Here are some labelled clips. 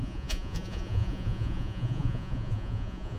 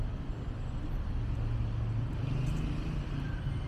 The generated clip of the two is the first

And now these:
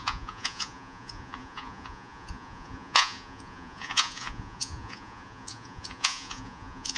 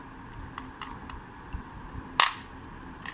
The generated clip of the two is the first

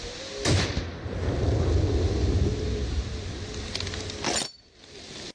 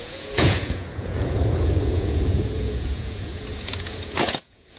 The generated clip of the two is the second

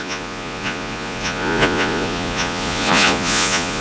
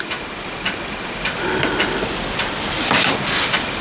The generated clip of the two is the first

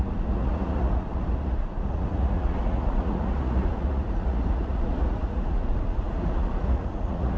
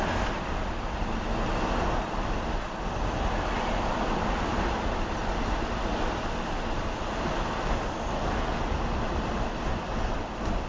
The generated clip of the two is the first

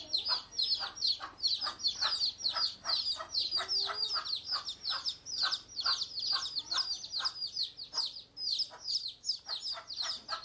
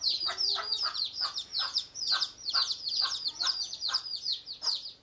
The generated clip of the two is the second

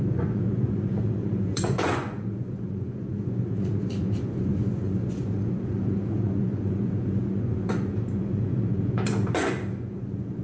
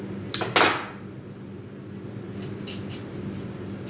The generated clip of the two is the first